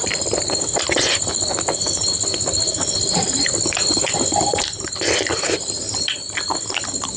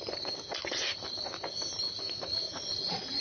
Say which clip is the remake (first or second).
first